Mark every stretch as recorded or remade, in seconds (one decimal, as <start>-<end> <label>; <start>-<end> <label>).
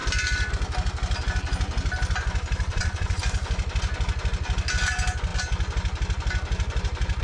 0.0-2.7 recorded; 2.7-3.2 remade; 3.2-7.2 recorded